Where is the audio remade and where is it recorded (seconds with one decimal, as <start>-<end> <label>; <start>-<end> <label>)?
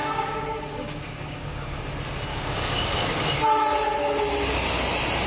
0.0-1.8 remade; 1.8-2.3 recorded; 2.3-3.4 remade; 3.4-5.3 recorded